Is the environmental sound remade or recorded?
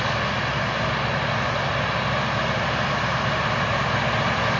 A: recorded